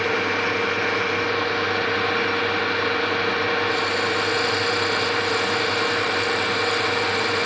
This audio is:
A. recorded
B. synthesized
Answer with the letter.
A